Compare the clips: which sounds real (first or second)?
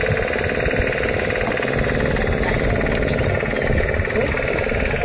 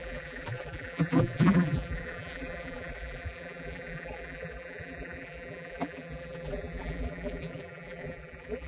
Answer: first